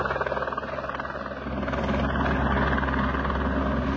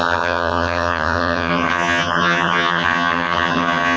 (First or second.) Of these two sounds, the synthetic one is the second